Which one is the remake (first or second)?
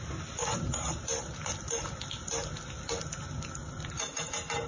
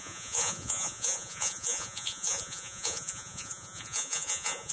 second